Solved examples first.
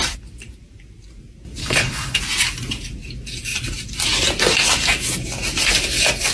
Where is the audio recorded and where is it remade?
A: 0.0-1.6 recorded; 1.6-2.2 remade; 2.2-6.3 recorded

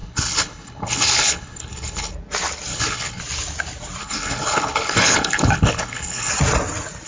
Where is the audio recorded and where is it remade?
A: 0.0-2.1 remade; 2.1-2.7 recorded; 2.7-3.2 remade; 3.2-4.0 recorded; 4.0-6.3 remade; 6.3-7.1 recorded

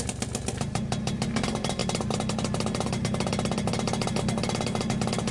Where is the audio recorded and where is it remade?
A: 0.0-5.3 recorded